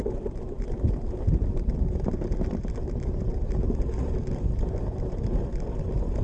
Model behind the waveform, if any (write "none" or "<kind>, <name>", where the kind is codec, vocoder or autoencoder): none